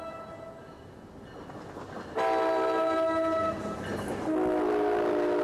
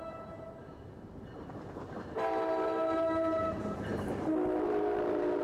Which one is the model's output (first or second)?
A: second